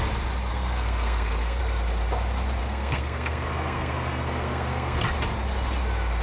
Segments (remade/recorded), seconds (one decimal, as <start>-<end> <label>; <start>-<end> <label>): 0.0-0.5 recorded; 0.5-1.6 remade; 1.6-2.6 recorded; 2.6-5.0 remade; 5.0-6.2 recorded